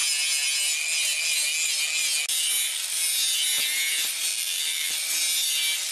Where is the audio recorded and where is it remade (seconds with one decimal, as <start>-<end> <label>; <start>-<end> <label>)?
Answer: 0.0-4.3 recorded; 4.3-4.9 remade; 4.9-5.9 recorded